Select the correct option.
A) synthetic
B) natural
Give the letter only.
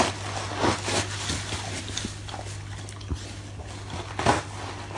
B